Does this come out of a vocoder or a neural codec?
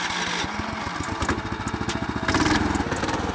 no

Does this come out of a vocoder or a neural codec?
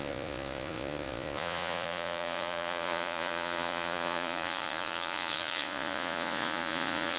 yes